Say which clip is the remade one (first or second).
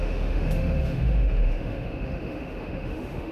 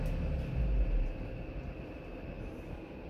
first